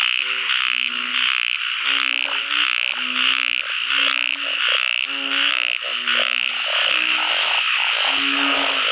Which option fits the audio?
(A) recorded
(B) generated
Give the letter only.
A